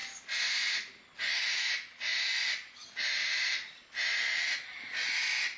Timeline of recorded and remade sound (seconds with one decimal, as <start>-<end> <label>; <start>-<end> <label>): 0.0-5.6 recorded